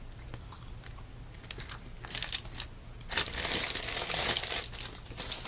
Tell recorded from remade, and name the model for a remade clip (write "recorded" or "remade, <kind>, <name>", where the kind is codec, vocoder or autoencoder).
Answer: recorded